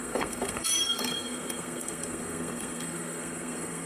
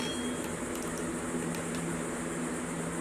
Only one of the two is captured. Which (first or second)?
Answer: second